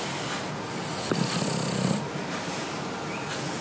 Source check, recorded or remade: recorded